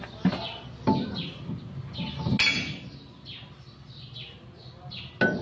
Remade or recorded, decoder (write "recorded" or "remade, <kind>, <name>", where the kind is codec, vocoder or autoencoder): recorded